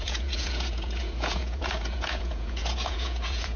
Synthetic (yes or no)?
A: yes